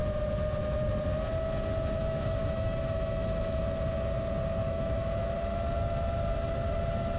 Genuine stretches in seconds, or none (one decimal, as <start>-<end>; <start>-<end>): 0.0-2.0; 3.6-4.6; 5.3-7.2